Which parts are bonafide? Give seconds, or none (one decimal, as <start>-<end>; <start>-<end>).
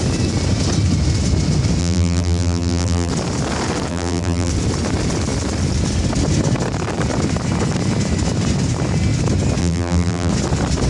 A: 0.0-1.8; 3.1-3.9; 4.5-9.6; 10.3-10.9